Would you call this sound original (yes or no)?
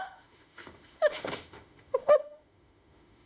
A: no